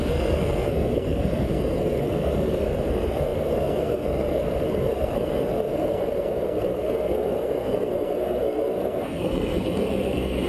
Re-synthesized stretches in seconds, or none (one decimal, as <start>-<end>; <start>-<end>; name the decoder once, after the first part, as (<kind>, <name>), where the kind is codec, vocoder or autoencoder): 0.0-10.5 (codec, SNAC)